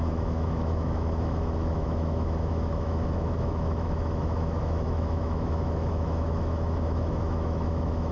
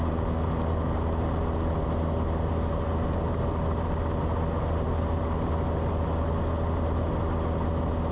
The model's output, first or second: first